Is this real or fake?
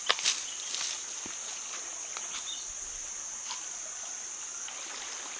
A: real